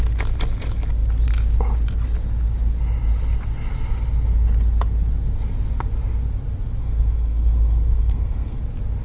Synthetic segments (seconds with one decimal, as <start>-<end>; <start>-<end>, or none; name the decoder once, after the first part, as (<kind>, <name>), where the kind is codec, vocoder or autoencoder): 6.8-8.6 (codec, SNAC)